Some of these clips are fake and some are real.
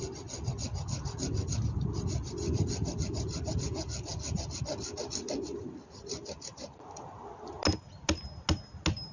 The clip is real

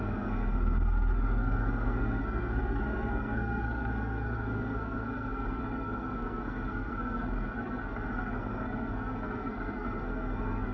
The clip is fake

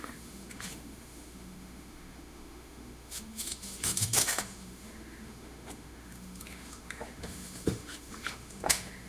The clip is fake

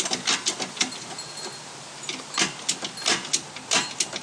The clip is real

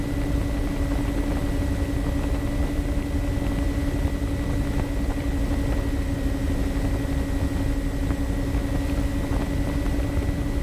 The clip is real